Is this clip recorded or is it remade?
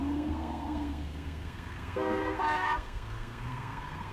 remade